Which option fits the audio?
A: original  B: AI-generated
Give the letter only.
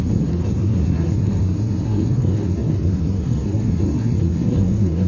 B